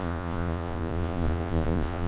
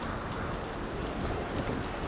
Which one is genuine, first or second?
second